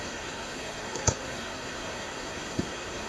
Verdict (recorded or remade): remade